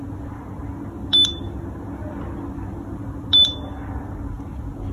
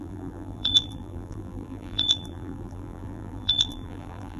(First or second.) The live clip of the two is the first